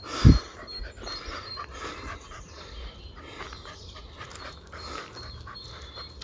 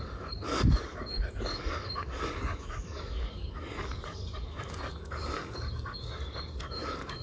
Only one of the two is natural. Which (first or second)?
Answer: first